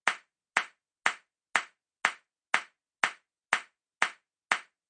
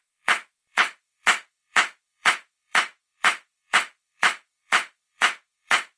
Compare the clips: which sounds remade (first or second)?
second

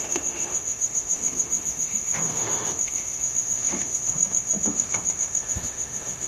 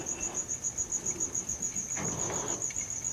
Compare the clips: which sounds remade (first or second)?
first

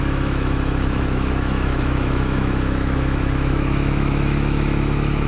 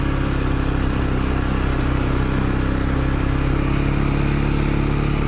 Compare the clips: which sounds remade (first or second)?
first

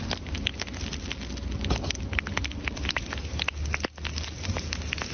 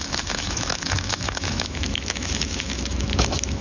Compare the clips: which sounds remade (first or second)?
second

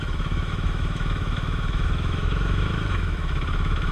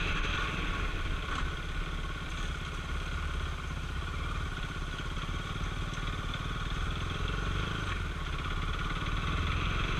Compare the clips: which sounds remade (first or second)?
first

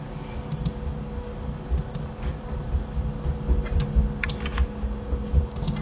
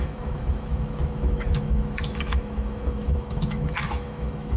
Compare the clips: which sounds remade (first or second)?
second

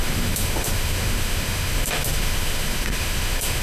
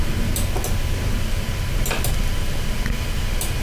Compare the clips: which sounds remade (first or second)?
first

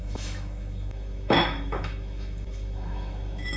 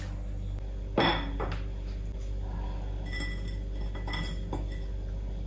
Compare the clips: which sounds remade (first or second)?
first